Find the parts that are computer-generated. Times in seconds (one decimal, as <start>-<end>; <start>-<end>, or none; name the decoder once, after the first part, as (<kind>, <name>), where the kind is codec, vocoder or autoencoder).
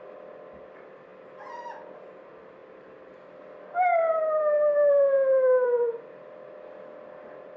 0.0-1.1 (vocoder, BigVGAN v2); 2.2-7.6